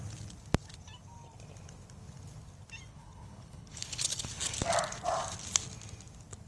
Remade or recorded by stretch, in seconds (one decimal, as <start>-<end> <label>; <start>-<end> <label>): 0.0-2.9 recorded; 2.9-4.3 remade; 4.3-6.5 recorded